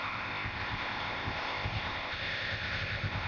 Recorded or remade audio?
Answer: remade